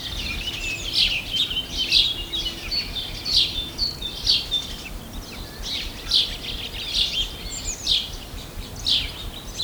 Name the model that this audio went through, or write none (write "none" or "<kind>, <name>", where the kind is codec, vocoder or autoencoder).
none